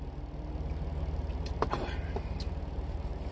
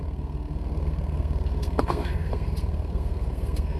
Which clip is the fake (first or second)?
second